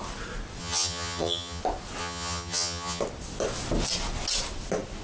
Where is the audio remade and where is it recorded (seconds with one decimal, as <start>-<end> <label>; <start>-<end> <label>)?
0.0-0.6 recorded; 0.6-1.6 remade; 1.6-2.0 recorded; 2.0-3.0 remade; 3.0-5.0 recorded